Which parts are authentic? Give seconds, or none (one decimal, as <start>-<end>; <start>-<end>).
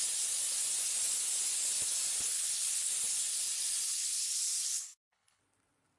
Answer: 0.0-2.3; 2.9-3.9; 5.4-6.0